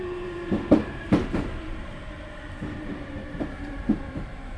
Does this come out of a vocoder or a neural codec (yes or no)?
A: yes